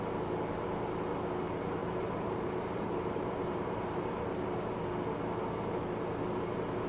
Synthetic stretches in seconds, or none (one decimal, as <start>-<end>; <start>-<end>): 1.8-4.4